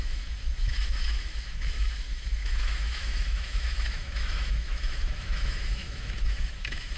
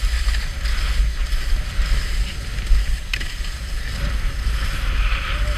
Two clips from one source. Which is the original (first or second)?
second